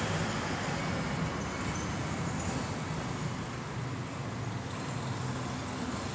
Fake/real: real